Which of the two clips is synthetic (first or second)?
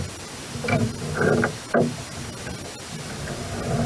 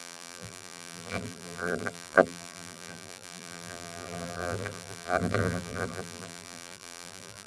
second